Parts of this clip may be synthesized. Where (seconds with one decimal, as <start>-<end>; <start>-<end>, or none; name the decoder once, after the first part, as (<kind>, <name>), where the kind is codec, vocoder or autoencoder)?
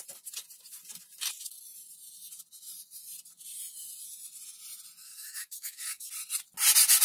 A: 5.0-6.1 (codec, DAC)